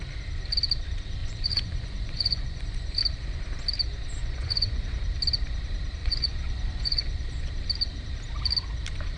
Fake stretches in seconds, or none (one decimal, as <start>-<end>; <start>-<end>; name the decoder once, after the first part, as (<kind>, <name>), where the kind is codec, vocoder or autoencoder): 1.2-3.0 (vocoder, Vocos); 4.2-4.8; 6.0-7.4